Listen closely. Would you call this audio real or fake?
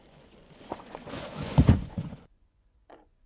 fake